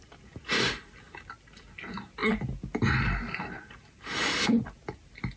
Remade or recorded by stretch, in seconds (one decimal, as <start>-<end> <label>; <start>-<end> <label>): 0.0-5.4 recorded